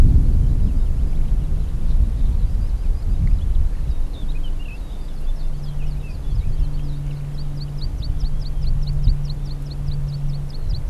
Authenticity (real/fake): real